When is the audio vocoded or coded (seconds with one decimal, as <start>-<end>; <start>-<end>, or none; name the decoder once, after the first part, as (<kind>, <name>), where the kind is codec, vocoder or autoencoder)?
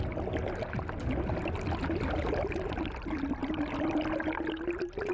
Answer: none